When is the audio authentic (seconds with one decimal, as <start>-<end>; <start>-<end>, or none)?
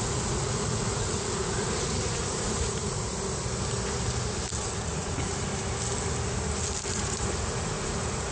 3.1-4.6; 5.5-6.9